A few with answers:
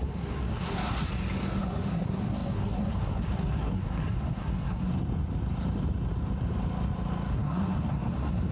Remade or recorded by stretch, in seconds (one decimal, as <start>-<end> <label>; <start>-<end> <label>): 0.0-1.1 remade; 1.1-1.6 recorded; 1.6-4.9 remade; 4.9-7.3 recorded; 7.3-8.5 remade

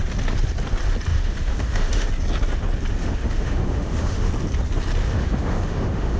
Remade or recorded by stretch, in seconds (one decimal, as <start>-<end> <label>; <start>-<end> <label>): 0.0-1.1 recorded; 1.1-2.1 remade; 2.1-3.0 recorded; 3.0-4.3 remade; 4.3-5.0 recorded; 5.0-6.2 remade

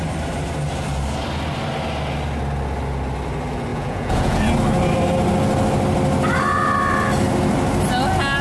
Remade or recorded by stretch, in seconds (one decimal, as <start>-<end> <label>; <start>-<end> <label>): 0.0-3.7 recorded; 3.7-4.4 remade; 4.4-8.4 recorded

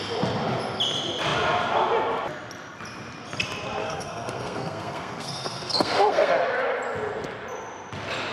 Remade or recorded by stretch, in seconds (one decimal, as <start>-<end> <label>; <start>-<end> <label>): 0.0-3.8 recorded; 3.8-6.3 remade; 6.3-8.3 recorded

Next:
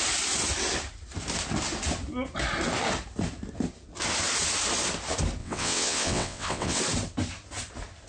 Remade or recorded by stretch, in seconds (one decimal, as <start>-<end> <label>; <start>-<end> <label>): 0.0-5.4 recorded; 5.4-6.8 remade; 6.8-8.1 recorded